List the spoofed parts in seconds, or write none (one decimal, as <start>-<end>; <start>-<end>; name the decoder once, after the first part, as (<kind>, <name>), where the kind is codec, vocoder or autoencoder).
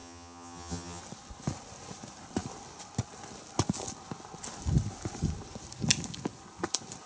0.0-1.0 (vocoder, HiFi-GAN)